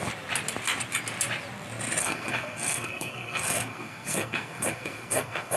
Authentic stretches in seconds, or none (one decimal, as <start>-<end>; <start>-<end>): 0.0-2.0

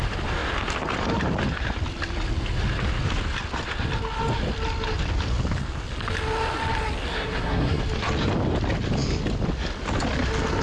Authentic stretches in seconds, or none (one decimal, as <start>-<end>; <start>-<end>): 0.0-7.1; 7.8-10.6

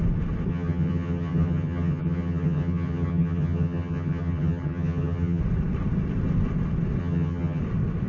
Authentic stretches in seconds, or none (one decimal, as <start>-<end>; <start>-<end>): 0.0-0.5; 5.4-7.0; 7.6-8.1

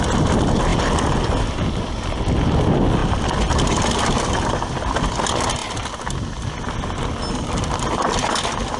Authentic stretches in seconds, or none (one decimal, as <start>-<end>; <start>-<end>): 0.0-8.8

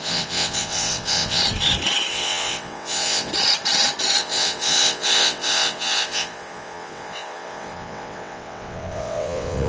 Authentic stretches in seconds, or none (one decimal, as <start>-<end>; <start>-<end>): 1.4-2.1; 3.3-4.2

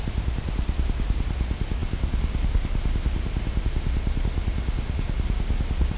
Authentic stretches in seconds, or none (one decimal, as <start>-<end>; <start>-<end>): 0.0-6.0

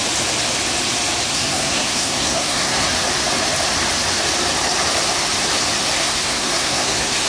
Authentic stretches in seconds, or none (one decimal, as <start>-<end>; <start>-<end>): 0.0-1.3; 2.9-6.0

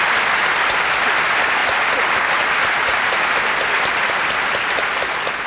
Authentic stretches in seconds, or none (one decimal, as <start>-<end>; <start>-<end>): 0.0-5.5